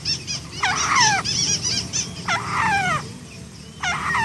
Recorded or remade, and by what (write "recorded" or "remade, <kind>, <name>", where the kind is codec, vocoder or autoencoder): recorded